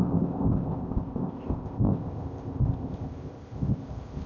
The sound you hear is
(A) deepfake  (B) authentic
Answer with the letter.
A